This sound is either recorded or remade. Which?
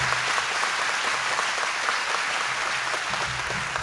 recorded